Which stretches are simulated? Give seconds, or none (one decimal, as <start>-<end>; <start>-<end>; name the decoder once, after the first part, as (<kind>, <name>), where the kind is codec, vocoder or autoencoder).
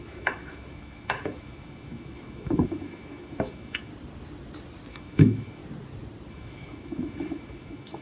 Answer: 0.0-3.9 (autoencoder, DAC-VAE); 4.9-5.6; 6.3-8.0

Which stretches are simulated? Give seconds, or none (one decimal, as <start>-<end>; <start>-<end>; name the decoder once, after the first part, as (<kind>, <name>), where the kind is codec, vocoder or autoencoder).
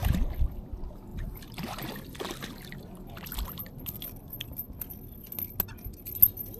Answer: 0.0-0.6 (vocoder, BigVGAN v2); 1.1-1.8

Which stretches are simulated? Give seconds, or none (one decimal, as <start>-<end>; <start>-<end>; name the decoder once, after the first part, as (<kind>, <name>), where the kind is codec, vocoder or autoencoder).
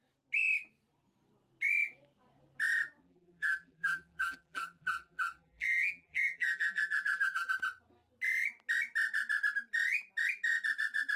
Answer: 3.0-7.5 (vocoder, BigVGAN v2)